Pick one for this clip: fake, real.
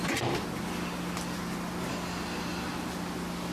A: real